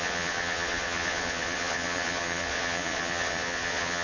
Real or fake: fake